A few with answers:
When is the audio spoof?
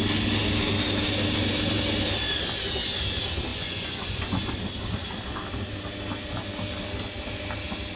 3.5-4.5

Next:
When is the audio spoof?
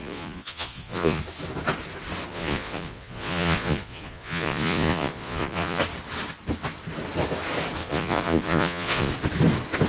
0.0-1.2; 2.3-5.8; 7.8-9.1